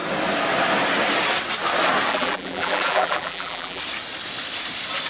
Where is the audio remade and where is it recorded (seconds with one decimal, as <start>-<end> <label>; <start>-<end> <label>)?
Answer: 0.0-2.1 recorded; 2.1-3.8 remade; 3.8-5.1 recorded